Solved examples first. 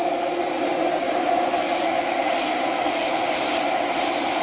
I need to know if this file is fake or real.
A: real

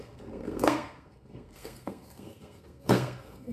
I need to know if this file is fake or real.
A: fake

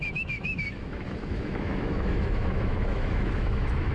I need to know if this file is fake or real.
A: fake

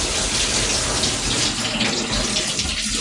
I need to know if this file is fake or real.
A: real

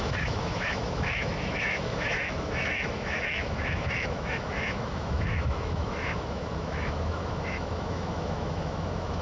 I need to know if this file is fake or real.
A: fake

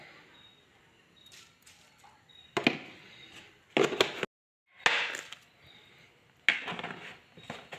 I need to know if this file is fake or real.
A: real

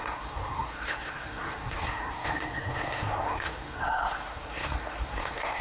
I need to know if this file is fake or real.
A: fake